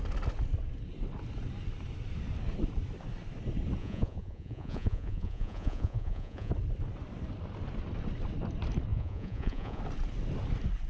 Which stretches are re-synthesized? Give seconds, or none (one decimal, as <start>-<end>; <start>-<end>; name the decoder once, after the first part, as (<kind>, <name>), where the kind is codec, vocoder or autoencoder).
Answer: 3.8-6.5 (vocoder, Vocos); 8.9-9.8